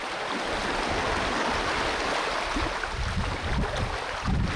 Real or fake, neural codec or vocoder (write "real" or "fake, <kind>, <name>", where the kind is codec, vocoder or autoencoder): real